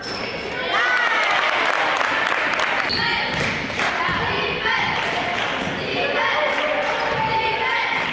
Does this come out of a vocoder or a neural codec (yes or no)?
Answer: no